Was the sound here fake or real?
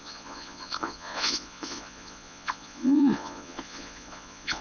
fake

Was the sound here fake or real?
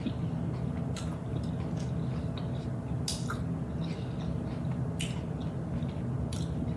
real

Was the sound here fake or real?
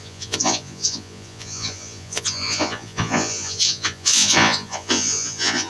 fake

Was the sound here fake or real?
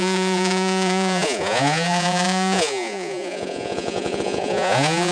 fake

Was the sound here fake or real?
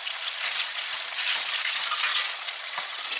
fake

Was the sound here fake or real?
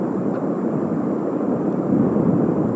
real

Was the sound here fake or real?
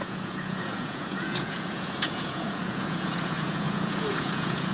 fake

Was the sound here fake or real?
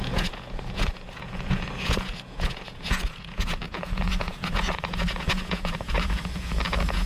fake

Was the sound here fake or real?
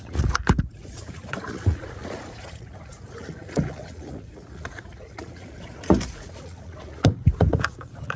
fake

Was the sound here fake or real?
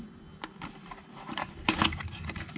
real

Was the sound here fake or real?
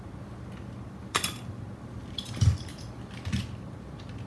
real